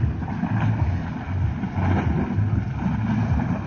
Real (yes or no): yes